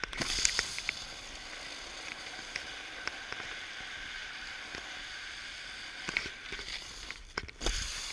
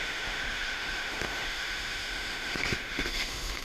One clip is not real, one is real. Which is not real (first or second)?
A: second